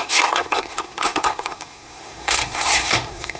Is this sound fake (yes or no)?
yes